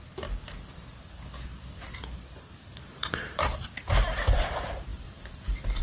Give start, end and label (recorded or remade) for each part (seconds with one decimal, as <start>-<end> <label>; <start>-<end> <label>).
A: 0.0-2.8 recorded; 2.8-5.8 remade